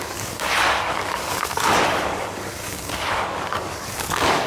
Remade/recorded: remade